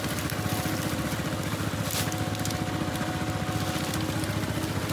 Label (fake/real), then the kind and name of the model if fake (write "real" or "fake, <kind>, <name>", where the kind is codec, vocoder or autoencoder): real